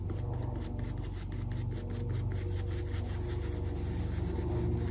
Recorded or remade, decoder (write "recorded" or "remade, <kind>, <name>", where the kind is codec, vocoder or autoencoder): recorded